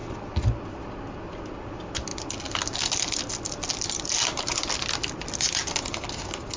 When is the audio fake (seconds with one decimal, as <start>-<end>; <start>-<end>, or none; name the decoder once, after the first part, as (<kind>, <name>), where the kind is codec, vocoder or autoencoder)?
none